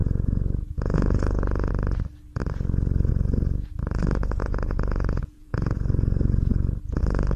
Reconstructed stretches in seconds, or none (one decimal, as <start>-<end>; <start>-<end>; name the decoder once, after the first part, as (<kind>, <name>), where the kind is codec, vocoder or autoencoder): 0.0-1.7 (vocoder, Vocos); 4.4-7.0